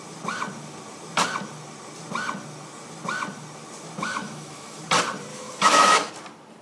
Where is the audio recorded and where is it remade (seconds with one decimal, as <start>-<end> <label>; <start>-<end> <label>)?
0.0-4.0 recorded; 4.0-4.8 remade; 4.8-5.3 recorded; 5.3-6.1 remade; 6.1-6.6 recorded